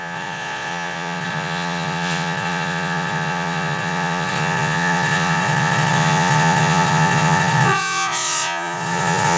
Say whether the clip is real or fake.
fake